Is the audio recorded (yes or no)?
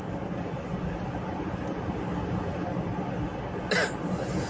yes